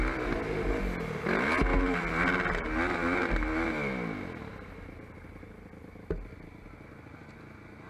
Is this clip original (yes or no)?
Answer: yes